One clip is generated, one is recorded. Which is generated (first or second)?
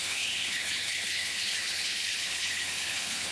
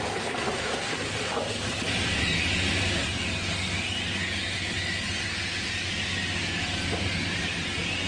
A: first